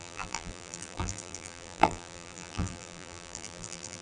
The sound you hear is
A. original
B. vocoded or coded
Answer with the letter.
B